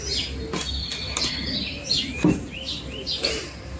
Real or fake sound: real